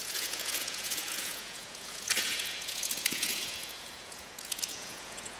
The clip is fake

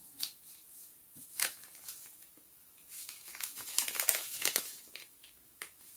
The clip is fake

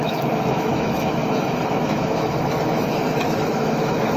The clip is fake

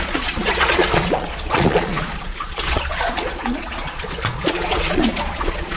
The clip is fake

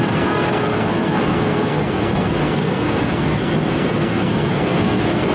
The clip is fake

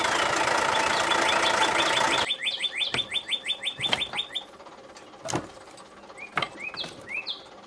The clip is real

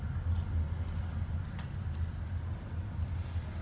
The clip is real